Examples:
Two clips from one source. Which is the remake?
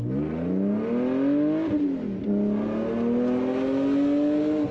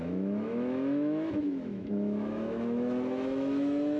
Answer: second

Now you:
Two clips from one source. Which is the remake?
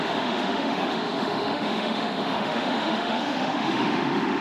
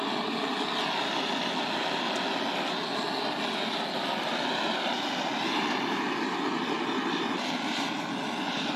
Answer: first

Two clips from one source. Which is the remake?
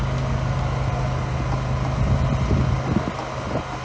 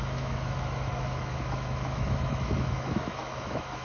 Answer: second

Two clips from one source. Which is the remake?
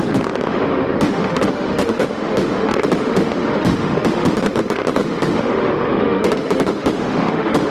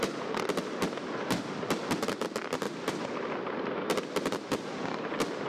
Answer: first